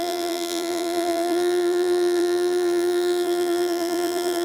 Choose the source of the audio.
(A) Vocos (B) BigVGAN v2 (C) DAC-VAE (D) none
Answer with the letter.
B